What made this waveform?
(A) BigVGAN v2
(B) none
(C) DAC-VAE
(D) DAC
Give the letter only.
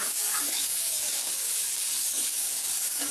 D